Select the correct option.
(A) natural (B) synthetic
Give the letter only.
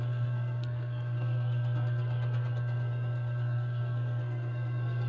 B